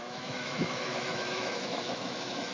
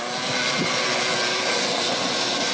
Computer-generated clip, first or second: first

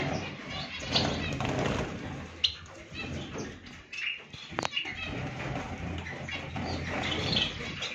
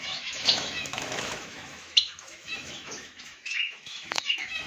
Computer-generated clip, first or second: second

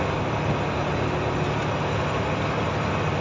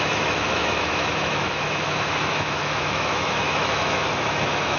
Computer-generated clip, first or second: second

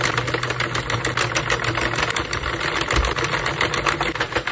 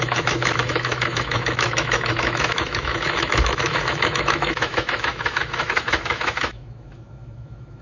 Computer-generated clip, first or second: second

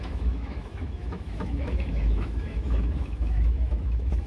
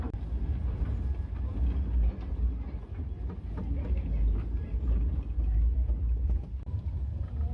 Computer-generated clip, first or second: first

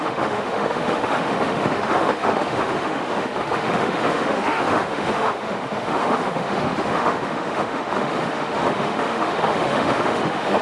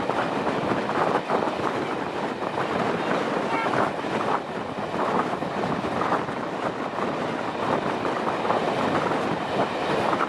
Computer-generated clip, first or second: first